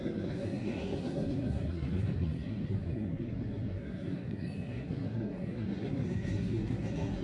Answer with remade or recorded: remade